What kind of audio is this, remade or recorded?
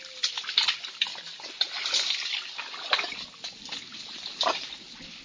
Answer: recorded